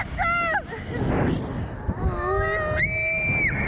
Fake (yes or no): no